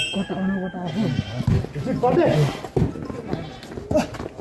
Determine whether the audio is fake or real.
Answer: real